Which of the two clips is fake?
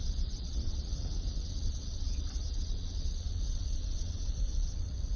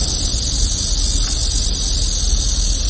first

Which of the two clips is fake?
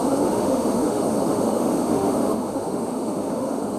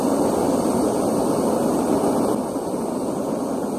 first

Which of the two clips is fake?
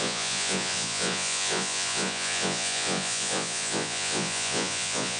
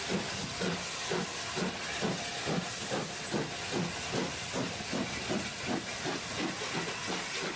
first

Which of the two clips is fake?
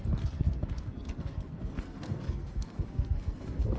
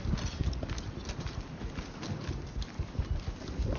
first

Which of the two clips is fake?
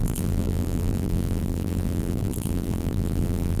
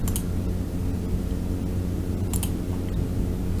first